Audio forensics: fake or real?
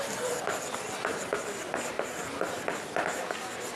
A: real